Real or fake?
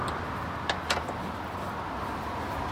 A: real